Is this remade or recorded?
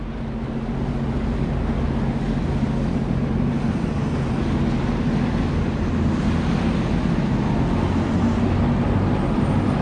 recorded